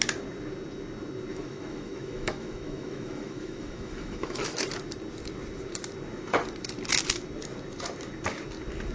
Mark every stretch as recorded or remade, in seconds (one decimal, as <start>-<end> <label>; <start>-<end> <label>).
0.0-1.3 recorded; 1.3-4.6 remade; 4.6-8.9 recorded